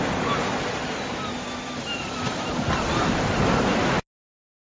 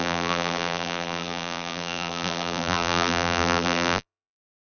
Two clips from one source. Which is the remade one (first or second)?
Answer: second